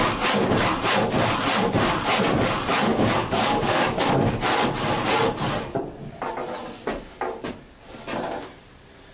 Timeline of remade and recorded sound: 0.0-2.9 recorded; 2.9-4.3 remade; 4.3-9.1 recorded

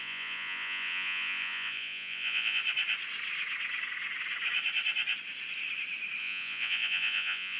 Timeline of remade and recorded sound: 0.0-2.6 remade; 2.6-6.2 recorded; 6.2-7.6 remade

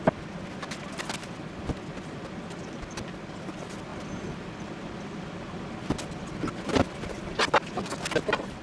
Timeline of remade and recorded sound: 0.0-8.6 recorded

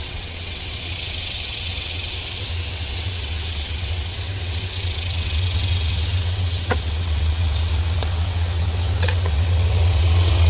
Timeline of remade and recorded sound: 0.0-10.5 remade

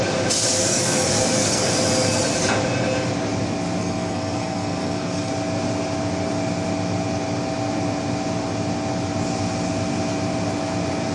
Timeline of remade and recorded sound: 0.0-0.6 recorded; 0.6-1.7 remade; 1.7-3.8 recorded; 3.8-5.3 remade; 5.3-11.1 recorded

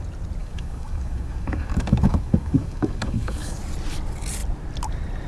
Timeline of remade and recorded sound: 0.0-0.4 recorded; 0.4-3.6 remade; 3.6-5.3 recorded

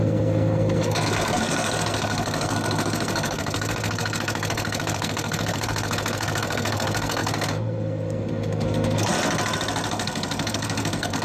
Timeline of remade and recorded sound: 0.0-9.1 remade; 9.1-9.9 recorded; 9.9-11.2 remade